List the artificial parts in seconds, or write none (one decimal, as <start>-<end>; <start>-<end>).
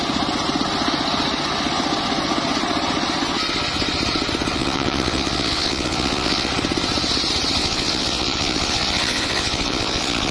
4.5-6.5; 7.6-10.3